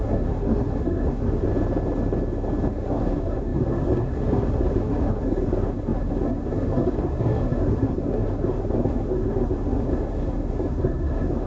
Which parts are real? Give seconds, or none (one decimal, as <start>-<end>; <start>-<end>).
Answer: 1.5-2.7